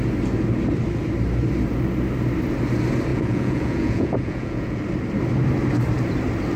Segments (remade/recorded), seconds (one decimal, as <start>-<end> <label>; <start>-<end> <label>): 0.0-3.1 recorded; 3.1-4.8 remade; 4.8-6.6 recorded